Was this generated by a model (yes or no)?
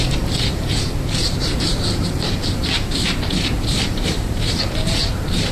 yes